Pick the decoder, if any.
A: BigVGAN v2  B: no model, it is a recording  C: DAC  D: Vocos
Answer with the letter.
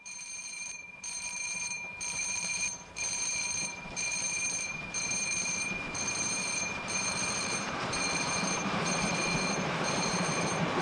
A